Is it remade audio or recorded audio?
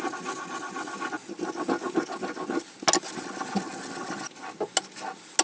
recorded